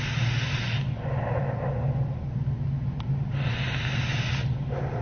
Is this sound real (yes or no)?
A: yes